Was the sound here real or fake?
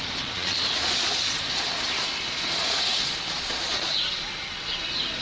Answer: fake